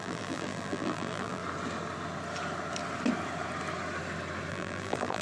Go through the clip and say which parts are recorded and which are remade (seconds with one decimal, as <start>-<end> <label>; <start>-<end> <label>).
0.0-1.4 remade; 1.4-4.5 recorded; 4.5-5.2 remade